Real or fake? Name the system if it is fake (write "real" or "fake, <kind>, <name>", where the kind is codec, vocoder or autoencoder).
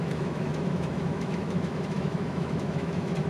fake, autoencoder, DAC-VAE